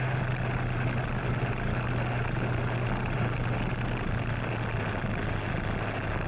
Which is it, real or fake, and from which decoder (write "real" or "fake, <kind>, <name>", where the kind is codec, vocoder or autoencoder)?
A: real